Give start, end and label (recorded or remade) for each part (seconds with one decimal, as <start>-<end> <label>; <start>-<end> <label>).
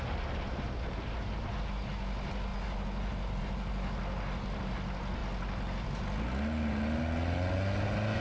0.0-8.2 recorded